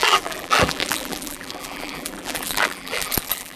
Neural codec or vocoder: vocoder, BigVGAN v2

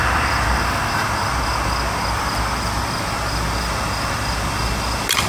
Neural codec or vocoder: none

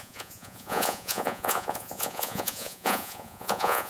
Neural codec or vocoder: vocoder, Vocos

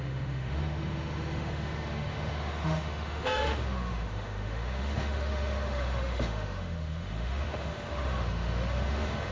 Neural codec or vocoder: autoencoder, DAC-VAE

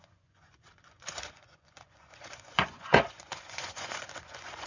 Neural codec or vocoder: vocoder, Vocos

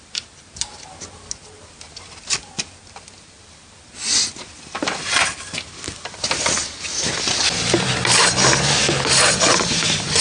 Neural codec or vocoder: none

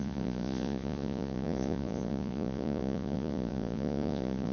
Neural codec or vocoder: vocoder, Vocos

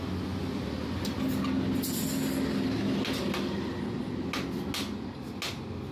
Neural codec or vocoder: none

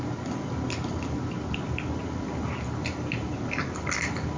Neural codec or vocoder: none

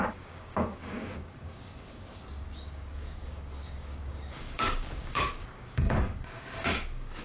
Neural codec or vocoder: codec, DAC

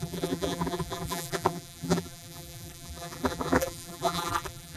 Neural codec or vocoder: vocoder, BigVGAN v2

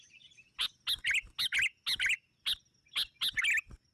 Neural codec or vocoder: none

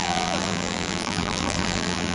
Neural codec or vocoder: vocoder, BigVGAN v2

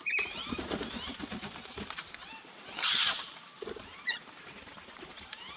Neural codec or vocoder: vocoder, BigVGAN v2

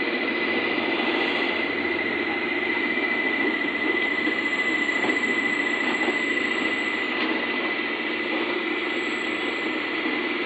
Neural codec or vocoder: none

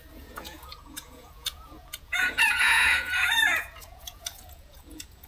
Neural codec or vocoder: vocoder, Vocos